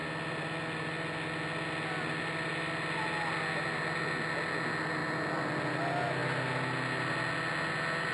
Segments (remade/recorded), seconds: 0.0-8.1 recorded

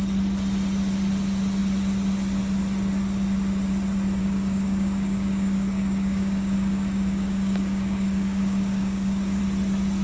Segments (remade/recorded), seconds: 0.0-4.2 recorded; 4.2-9.4 remade; 9.4-10.0 recorded